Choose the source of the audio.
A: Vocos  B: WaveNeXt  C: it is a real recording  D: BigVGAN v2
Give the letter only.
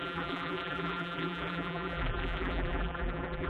D